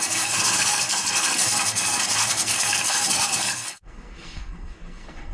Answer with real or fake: fake